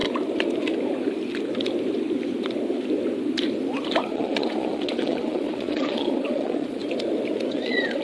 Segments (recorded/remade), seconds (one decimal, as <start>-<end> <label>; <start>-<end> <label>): 0.0-4.0 recorded; 4.0-6.8 remade; 6.8-7.5 recorded; 7.5-8.0 remade